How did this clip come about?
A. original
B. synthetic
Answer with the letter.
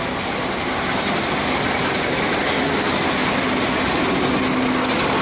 A